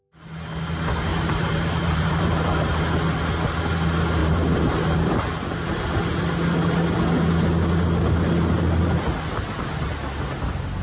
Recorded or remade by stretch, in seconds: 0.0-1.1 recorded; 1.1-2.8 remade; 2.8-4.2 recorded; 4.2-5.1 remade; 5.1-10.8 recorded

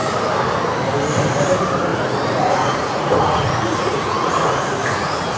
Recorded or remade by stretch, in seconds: 0.0-1.9 recorded; 1.9-5.4 remade

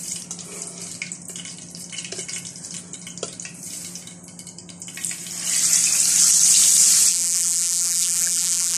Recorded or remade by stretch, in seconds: 0.0-7.1 recorded; 7.1-8.8 remade

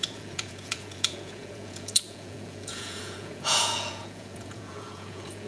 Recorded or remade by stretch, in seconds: 0.0-5.5 remade

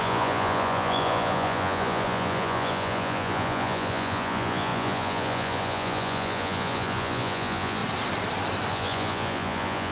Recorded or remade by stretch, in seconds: 0.0-7.8 remade; 7.8-8.7 recorded; 8.7-9.9 remade

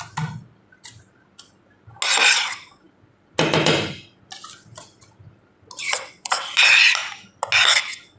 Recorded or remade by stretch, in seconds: 0.0-5.8 recorded; 5.8-6.5 remade; 6.5-8.2 recorded